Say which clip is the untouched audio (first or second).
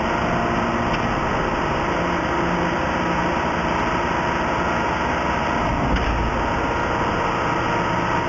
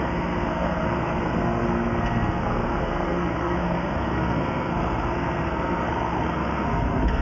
first